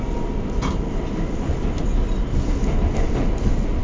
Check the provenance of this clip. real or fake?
real